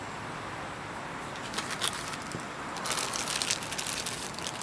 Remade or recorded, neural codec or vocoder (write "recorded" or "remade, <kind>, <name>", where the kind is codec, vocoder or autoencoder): recorded